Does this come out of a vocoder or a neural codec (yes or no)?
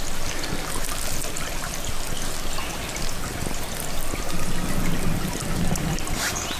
no